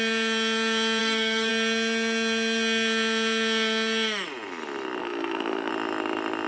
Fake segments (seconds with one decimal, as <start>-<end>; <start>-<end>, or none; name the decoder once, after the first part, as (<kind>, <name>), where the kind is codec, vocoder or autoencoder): 1.0-1.5 (codec, SNAC); 5.0-5.7